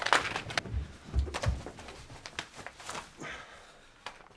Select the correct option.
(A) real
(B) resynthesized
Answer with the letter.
A